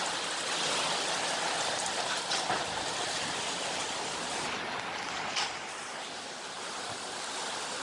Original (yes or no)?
yes